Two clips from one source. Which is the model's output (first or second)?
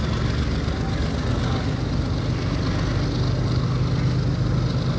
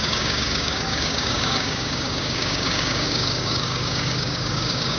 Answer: second